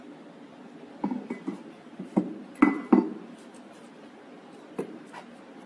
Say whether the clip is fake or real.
real